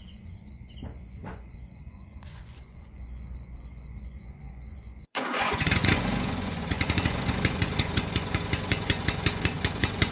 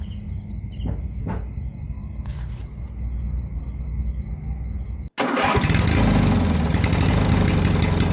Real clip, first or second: second